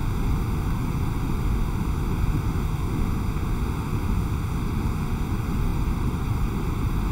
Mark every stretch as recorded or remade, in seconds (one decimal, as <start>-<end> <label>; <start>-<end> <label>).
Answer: 0.0-0.8 remade; 0.8-1.4 recorded; 1.4-5.3 remade; 5.3-7.1 recorded